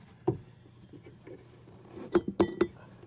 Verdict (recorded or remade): recorded